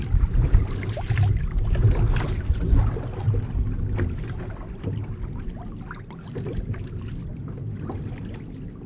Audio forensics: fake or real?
real